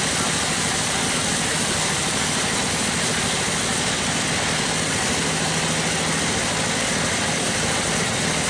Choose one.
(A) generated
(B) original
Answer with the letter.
B